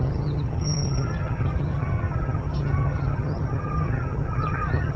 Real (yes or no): no